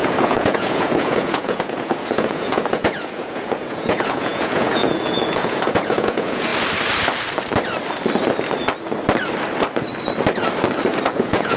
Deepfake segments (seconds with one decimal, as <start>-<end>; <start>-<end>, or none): 0.0-6.5; 11.1-11.6